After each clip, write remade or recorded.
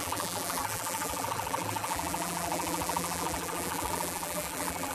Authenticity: remade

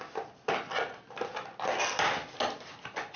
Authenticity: recorded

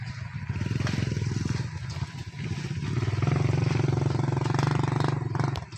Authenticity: remade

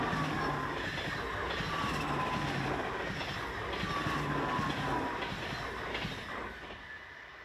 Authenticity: recorded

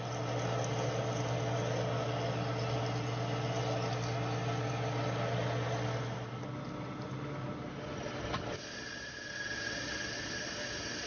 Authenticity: recorded